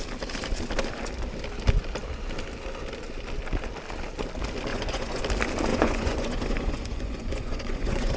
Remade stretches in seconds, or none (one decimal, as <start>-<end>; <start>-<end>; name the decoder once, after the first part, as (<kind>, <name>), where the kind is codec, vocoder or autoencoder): 4.7-5.2 (vocoder, Vocos); 5.7-8.2